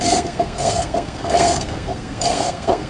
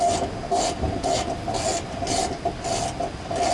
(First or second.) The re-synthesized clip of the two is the first